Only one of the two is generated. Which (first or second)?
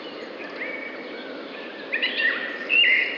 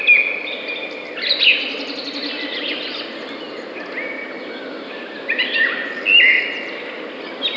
first